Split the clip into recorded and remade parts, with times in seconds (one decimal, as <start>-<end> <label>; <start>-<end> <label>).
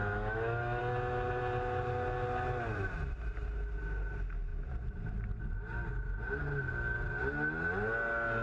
0.0-0.8 remade; 0.8-8.4 recorded